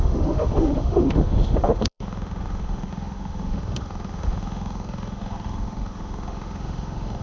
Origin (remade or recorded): remade